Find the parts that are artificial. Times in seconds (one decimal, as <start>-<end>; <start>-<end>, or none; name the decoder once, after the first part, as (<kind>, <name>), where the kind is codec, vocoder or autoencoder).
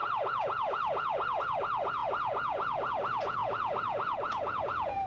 0.0-5.1 (vocoder, Vocos)